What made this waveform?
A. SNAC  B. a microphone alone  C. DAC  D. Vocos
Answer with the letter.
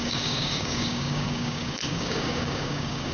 C